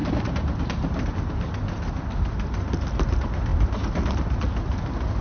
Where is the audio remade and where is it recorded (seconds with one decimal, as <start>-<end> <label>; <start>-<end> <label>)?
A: 0.0-5.2 recorded